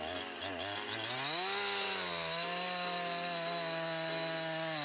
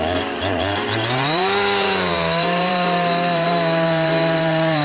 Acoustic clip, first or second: first